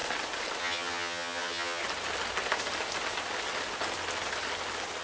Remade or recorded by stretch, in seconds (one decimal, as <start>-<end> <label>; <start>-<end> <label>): 0.0-0.6 recorded; 0.6-1.8 remade; 1.8-5.0 recorded